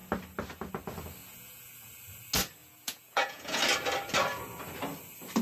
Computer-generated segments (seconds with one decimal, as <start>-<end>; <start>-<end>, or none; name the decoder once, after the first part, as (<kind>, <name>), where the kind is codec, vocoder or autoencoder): 1.2-1.9 (vocoder, Vocos); 2.6-3.6